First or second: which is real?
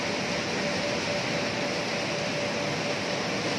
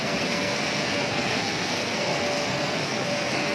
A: first